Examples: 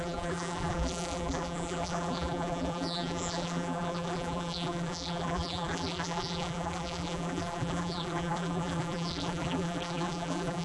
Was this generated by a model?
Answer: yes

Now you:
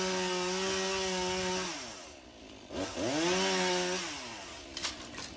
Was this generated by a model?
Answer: no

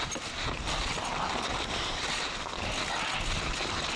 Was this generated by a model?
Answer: no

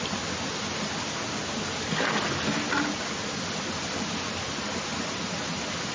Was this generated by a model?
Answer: no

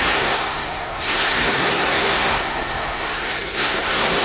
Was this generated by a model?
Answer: yes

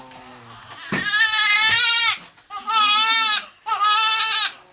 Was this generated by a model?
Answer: no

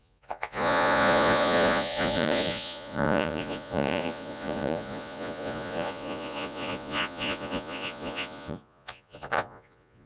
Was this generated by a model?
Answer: yes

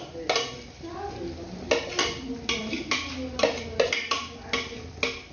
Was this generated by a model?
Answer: no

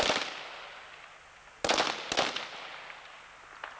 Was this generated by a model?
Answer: no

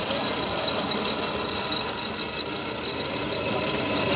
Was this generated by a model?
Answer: no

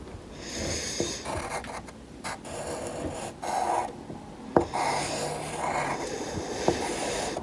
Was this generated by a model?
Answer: no